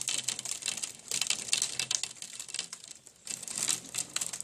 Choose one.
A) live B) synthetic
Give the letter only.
A